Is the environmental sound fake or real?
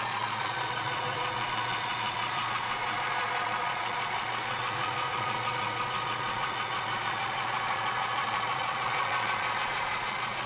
fake